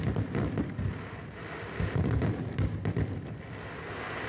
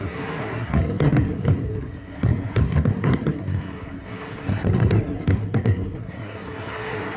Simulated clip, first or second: second